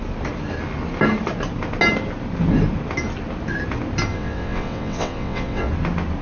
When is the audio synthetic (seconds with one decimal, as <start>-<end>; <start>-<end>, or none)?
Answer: 4.1-5.7